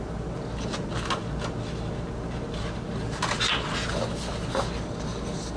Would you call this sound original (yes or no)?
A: yes